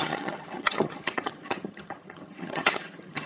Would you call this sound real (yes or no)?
no